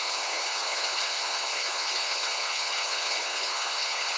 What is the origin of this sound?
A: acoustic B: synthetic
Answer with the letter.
B